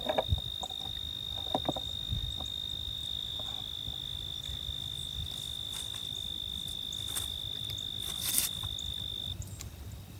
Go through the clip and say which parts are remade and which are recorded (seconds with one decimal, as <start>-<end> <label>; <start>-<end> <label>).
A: 0.0-10.2 recorded